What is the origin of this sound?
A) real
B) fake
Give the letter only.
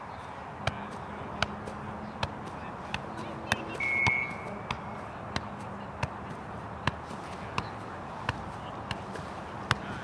A